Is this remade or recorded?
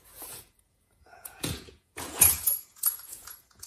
remade